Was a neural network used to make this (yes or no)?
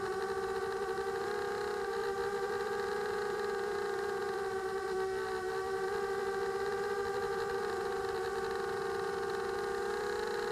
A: yes